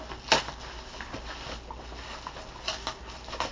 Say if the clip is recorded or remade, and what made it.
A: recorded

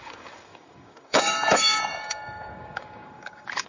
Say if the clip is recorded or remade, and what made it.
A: remade, codec, DAC